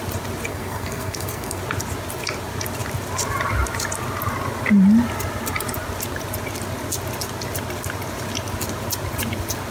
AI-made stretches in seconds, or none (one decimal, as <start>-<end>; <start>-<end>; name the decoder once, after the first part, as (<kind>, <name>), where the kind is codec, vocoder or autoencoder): 0.5-1.6 (codec, SNAC)